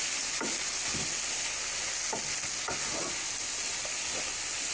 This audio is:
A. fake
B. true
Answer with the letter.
B